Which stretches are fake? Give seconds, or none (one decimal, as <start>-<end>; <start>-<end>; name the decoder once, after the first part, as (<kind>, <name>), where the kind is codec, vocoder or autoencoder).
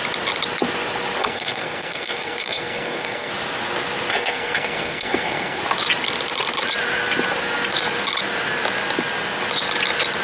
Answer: 1.2-3.3 (codec, SNAC); 4.1-5.6